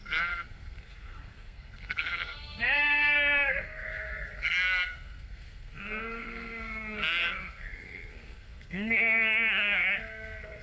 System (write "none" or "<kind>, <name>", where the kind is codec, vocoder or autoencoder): codec, SNAC